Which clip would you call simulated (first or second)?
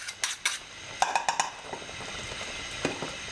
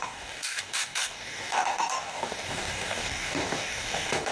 second